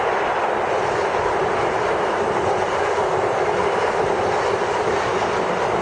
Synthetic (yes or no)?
no